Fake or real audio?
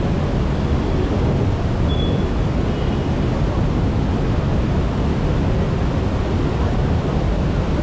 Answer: real